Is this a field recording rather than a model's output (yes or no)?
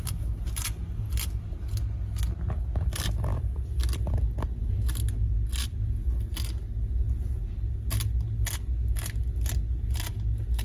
yes